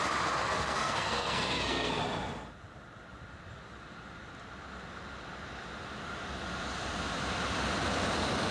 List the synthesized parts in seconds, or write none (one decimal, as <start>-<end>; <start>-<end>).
0.4-2.0